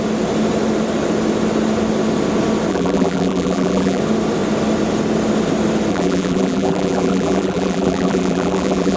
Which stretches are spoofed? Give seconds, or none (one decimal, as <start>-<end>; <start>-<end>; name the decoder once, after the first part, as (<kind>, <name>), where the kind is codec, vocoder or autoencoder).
2.7-4.0 (vocoder, BigVGAN v2); 5.9-9.0